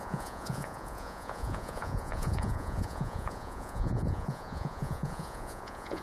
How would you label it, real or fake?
fake